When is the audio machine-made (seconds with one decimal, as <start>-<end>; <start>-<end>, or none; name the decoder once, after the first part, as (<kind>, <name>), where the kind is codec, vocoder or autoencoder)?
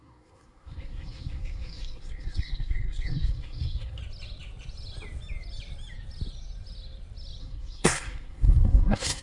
0.0-4.0 (codec, SNAC); 7.4-9.2